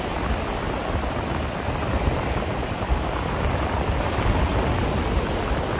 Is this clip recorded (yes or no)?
yes